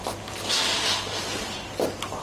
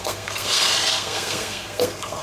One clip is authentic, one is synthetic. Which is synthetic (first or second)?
second